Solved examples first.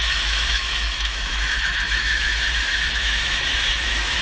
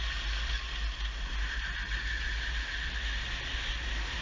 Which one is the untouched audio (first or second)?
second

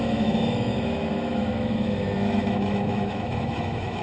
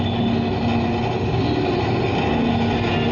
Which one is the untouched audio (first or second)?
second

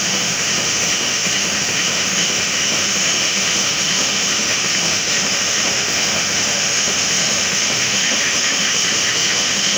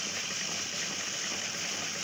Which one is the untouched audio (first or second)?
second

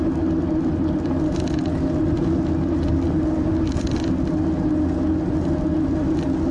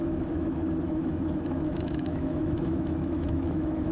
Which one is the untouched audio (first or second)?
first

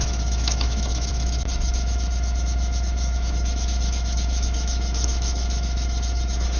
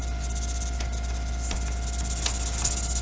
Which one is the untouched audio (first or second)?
second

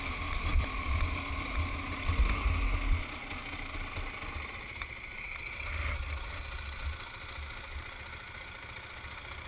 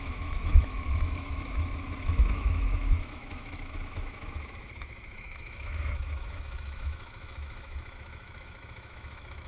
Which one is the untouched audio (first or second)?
first